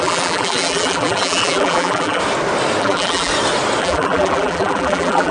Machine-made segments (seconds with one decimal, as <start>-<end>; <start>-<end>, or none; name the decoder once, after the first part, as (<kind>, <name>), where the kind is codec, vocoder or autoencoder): 0.0-2.2 (vocoder, BigVGAN v2); 2.8-3.3; 3.8-5.3